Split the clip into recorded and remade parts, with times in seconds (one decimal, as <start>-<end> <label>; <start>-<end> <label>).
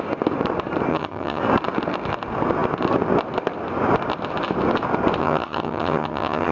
0.0-0.9 recorded; 0.9-1.4 remade; 1.4-5.2 recorded; 5.2-6.5 remade